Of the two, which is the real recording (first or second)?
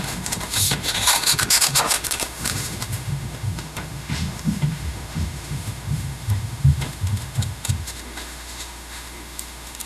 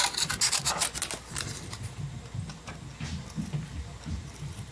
second